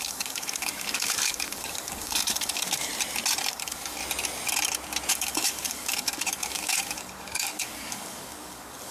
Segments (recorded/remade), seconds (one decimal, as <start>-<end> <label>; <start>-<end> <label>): 0.0-2.9 remade; 2.9-3.5 recorded; 3.5-4.0 remade; 4.0-5.1 recorded; 5.1-8.9 remade